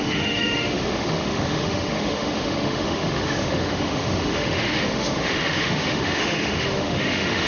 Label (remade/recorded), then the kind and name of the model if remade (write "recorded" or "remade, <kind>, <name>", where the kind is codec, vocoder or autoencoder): remade, autoencoder, DAC-VAE